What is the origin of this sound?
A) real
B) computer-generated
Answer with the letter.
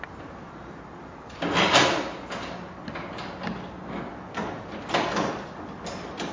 A